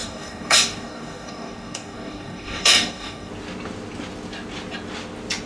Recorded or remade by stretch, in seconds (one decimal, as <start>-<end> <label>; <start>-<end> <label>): 0.0-3.3 remade; 3.3-5.5 recorded